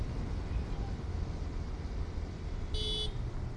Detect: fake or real real